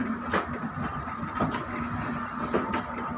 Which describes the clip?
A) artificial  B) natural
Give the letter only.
B